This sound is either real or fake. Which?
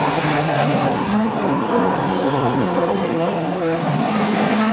fake